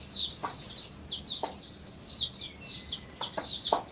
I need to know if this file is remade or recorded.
recorded